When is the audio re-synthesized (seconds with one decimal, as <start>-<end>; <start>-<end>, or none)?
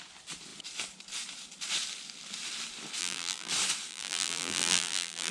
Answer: 3.0-3.5; 3.9-5.3